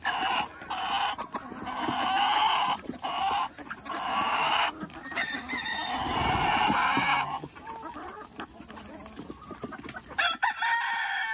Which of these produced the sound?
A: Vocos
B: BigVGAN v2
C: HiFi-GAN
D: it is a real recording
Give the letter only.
D